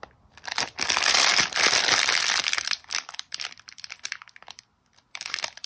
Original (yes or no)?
no